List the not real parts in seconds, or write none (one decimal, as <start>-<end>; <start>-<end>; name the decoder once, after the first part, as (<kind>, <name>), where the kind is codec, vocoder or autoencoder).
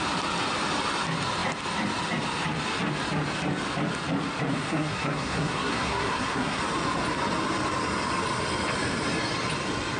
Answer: 4.5-6.6 (codec, SNAC)